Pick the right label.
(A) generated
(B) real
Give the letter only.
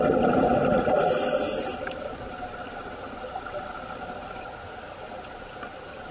B